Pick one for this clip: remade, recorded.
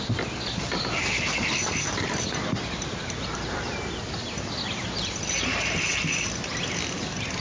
recorded